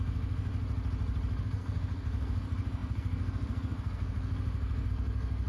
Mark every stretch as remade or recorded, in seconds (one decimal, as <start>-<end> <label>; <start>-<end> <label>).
0.0-0.5 remade; 0.5-1.4 recorded; 1.4-5.5 remade